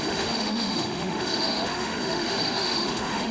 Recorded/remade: remade